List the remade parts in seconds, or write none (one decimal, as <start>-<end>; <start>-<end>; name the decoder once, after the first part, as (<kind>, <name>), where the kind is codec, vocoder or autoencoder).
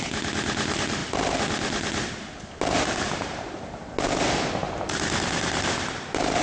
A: none